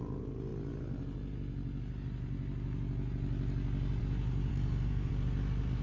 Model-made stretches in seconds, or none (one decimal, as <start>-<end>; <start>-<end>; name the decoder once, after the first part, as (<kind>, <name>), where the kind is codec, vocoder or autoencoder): 4.5-5.1 (codec, SNAC)